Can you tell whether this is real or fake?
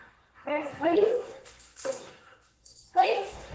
fake